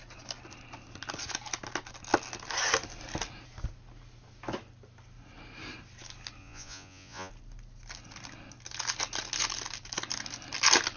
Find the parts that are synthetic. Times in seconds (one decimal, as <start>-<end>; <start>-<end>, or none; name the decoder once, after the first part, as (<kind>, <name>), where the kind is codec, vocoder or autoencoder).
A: 6.4-7.3 (vocoder, Vocos)

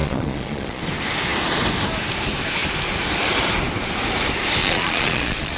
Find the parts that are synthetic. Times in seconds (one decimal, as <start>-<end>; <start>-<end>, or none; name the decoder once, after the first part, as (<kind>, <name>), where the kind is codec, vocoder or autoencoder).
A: 0.0-0.8 (vocoder, Vocos); 4.6-5.6